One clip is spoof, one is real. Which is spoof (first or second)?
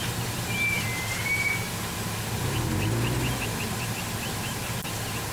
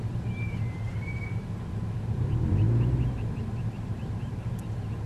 second